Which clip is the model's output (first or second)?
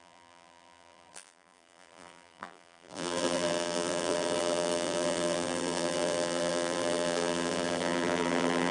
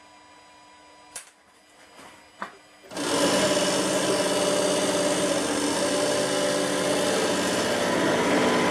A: first